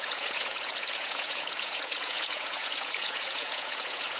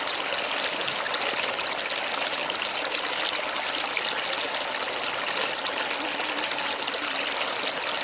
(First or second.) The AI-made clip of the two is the first